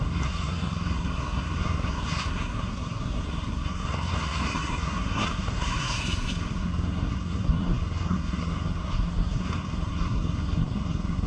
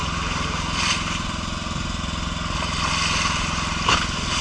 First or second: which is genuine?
second